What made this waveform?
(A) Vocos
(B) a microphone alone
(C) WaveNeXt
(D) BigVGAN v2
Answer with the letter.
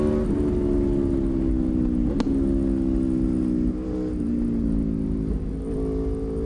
B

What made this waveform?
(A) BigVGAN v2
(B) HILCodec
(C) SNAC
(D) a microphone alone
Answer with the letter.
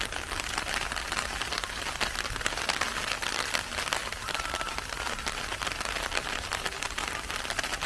D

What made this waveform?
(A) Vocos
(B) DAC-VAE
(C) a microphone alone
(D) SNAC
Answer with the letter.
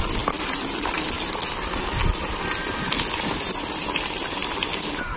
C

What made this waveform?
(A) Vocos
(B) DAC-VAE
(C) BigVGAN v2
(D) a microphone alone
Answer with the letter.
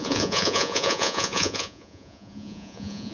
A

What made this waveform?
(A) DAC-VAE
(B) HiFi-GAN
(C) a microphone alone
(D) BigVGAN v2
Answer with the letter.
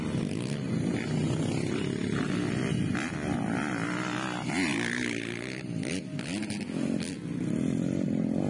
C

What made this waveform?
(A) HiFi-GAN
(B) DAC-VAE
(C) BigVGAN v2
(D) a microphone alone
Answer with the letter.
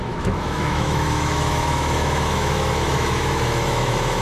B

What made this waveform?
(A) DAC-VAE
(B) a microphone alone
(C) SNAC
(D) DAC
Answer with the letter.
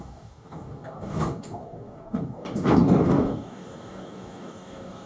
D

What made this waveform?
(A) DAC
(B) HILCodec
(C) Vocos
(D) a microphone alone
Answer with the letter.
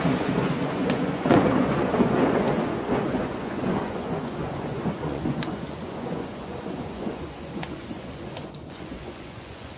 C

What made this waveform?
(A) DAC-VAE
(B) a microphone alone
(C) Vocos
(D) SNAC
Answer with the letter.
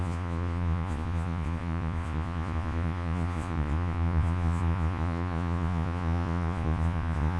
C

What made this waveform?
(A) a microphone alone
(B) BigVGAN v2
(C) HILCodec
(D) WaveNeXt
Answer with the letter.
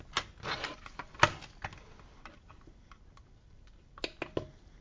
A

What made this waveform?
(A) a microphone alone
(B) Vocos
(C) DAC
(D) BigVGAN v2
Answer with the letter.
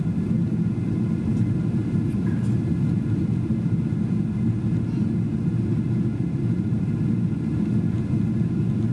A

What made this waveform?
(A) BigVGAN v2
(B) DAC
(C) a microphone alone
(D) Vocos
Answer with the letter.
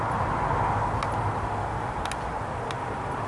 C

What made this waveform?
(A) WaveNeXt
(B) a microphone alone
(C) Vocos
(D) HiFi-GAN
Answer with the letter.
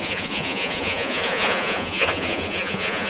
C